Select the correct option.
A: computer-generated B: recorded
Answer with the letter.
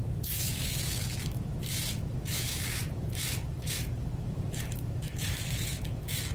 A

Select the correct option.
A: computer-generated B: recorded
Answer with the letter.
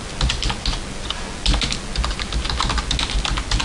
B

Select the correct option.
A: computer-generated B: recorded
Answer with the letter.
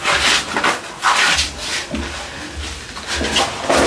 B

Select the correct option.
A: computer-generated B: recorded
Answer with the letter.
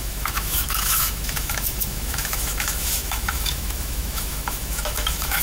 A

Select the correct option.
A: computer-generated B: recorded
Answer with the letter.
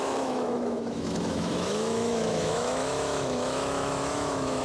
A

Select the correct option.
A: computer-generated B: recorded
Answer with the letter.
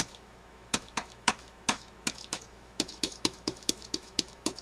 A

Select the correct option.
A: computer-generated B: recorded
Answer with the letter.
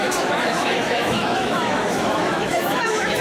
A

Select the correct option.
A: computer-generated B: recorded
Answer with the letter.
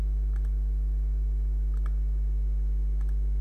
B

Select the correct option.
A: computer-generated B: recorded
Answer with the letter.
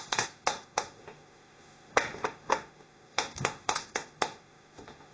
A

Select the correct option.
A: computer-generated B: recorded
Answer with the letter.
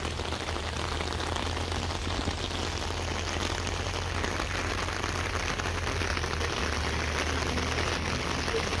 B